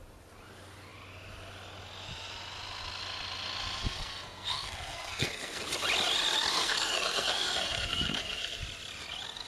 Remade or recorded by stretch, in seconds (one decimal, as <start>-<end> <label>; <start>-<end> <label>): 0.0-3.8 recorded; 3.8-5.6 remade; 5.6-6.5 recorded; 6.5-8.6 remade; 8.6-9.5 recorded